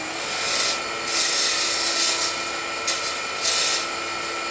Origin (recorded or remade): recorded